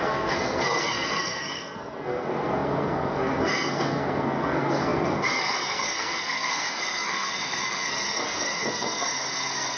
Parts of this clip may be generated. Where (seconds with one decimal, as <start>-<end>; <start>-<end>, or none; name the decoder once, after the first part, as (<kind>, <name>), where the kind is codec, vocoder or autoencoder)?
0.0-9.8 (codec, SNAC)